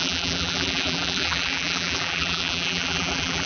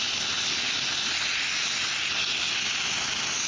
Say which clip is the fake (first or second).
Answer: first